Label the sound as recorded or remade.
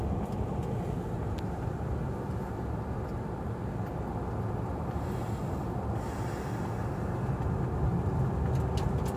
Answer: recorded